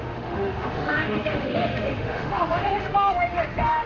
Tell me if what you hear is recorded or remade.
remade